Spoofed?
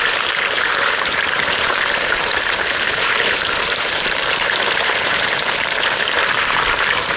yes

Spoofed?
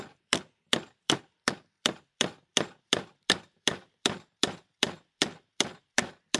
yes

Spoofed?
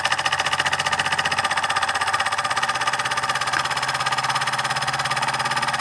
no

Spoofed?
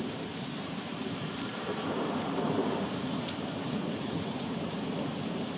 yes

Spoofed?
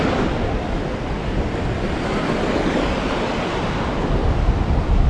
no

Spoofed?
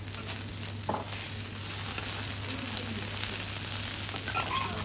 no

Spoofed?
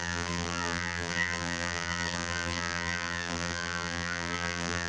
yes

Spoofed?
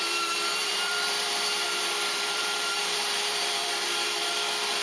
yes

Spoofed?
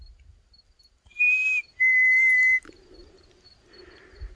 no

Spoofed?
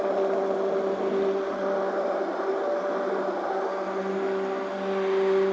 no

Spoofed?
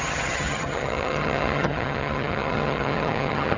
yes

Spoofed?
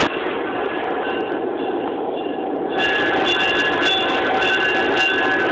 no